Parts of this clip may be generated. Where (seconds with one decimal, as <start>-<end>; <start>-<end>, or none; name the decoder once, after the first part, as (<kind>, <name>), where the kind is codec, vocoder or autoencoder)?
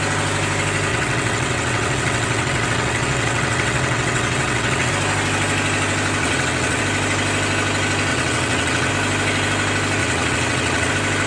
0.9-4.9 (vocoder, WaveNeXt); 6.2-6.8; 8.1-8.9; 10.0-10.9